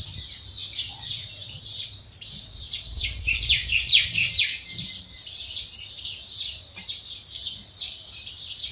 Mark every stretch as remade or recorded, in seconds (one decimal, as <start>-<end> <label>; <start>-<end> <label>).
0.0-0.6 recorded; 0.6-4.3 remade; 4.3-5.7 recorded; 5.7-8.7 remade